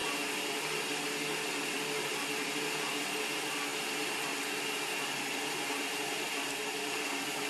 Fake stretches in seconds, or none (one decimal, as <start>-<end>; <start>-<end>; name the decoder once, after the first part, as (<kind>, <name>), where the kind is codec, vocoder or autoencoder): none